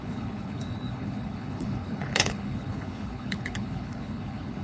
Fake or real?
fake